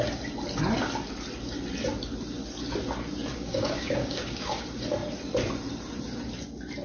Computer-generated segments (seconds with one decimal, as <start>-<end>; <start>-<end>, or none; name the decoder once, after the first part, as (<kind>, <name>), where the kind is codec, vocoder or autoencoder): 3.3-4.6 (codec, DAC)